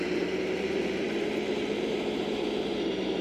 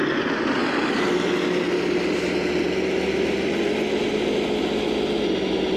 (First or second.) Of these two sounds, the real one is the second